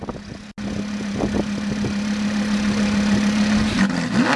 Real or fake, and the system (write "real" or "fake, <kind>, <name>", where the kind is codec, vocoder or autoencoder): real